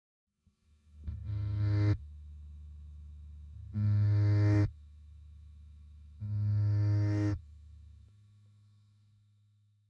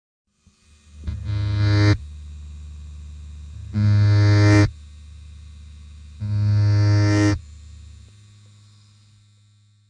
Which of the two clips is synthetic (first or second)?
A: first